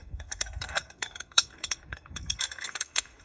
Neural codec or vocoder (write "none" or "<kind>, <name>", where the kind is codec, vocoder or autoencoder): codec, SNAC